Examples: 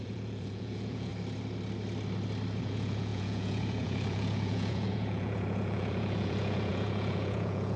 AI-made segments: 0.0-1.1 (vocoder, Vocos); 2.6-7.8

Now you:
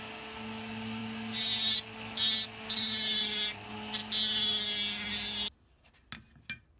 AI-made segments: none

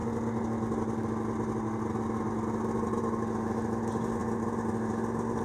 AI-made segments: none

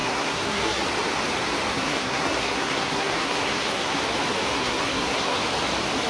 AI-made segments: 0.0-0.8 (codec, SNAC); 1.7-4.0; 4.5-5.4